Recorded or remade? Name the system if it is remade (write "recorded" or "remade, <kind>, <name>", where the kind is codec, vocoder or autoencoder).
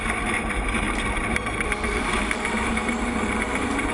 remade, vocoder, BigVGAN v2